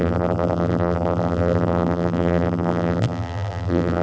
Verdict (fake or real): fake